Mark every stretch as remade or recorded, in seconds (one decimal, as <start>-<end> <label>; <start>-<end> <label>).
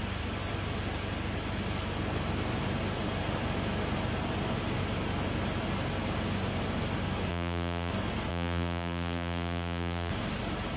0.0-7.3 recorded; 7.3-7.9 remade; 7.9-8.3 recorded; 8.3-10.1 remade; 10.1-10.8 recorded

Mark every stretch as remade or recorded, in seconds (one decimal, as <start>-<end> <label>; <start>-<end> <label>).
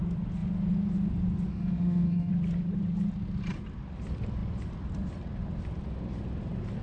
0.0-1.5 recorded; 1.5-2.3 remade; 2.3-6.8 recorded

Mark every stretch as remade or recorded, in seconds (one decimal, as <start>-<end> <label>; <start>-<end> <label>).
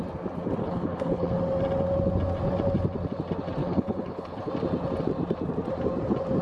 0.0-0.6 recorded; 0.6-1.4 remade; 1.4-3.6 recorded; 3.6-4.5 remade; 4.5-6.4 recorded